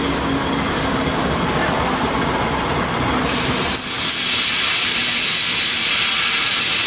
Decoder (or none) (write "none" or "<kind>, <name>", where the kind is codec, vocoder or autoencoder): none